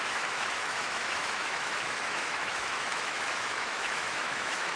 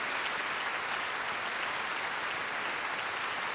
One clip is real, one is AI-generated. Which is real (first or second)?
second